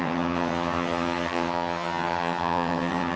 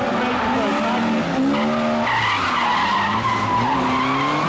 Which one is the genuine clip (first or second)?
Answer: second